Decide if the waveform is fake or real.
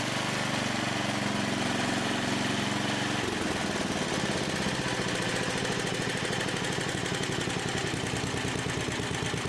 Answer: real